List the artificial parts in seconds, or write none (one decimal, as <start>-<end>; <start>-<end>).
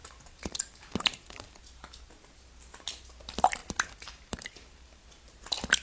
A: 0.0-1.6; 3.6-5.0